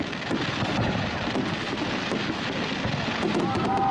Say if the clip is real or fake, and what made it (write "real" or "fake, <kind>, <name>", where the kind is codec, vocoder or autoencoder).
real